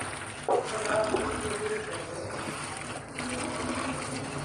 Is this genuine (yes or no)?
yes